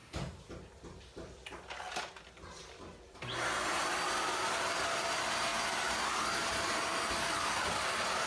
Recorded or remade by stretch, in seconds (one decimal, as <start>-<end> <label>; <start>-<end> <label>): 0.0-8.3 recorded